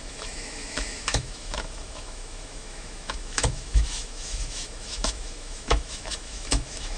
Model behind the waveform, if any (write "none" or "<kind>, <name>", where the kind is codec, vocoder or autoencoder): autoencoder, DAC-VAE